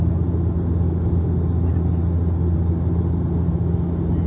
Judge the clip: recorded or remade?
recorded